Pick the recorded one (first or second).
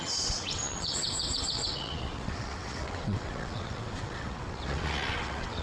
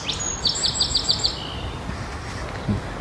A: second